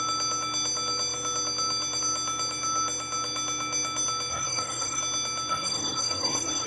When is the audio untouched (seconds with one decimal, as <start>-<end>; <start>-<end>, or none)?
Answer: 0.0-4.3; 5.0-5.5